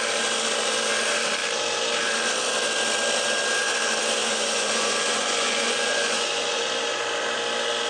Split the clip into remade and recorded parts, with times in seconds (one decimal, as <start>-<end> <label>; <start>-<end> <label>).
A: 0.0-4.2 recorded; 4.2-6.6 remade; 6.6-7.9 recorded